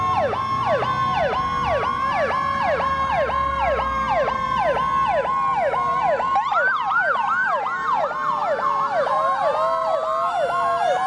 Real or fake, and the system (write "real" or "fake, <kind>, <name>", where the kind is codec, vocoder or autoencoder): real